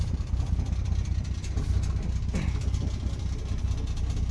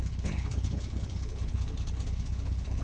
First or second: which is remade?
second